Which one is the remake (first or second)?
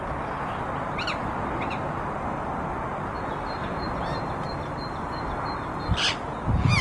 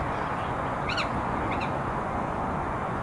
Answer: second